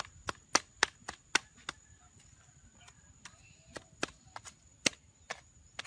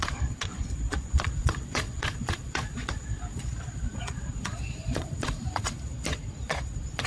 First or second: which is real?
first